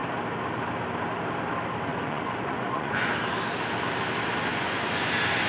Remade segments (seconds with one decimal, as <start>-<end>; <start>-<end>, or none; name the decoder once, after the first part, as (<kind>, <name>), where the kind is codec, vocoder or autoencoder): 1.9-3.1 (vocoder, Vocos); 4.5-5.1